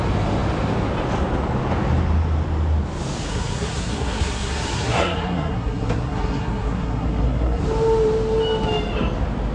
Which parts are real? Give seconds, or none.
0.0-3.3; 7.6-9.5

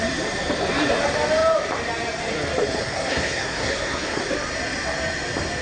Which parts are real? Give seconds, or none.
0.0-2.8; 4.2-5.6

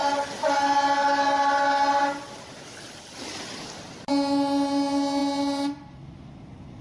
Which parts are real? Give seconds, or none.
0.0-6.8

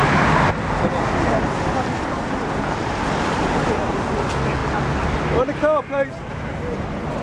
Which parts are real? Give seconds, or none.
0.0-7.2

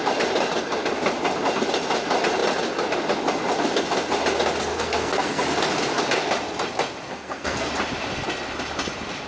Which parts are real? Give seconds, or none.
0.0-4.7; 5.4-7.1; 7.7-9.3